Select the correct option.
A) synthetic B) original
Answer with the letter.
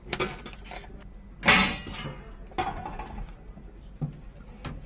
B